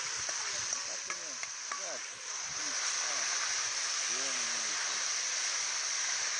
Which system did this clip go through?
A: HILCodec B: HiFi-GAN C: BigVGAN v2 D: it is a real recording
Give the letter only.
C